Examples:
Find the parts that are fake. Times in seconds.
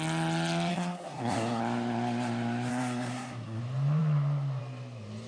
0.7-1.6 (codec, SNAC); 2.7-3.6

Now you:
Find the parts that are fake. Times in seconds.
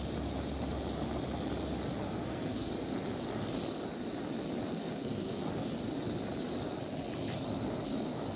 2.0-2.7 (codec, SNAC); 4.7-5.5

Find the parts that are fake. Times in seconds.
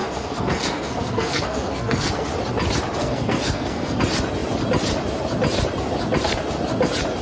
0.0-2.3 (codec, SNAC); 3.0-4.0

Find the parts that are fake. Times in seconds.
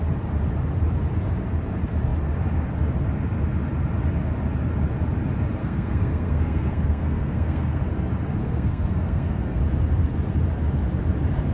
5.6-7.8 (codec, SNAC); 8.4-9.6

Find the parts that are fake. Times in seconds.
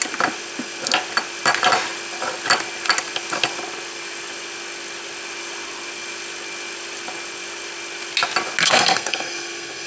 8.6-9.9 (codec, SNAC)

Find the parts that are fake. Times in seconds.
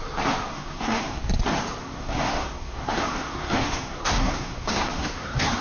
0.5-1.2 (codec, SNAC); 1.8-5.6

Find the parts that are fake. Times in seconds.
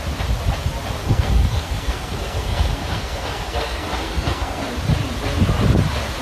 1.0-4.7 (codec, SNAC)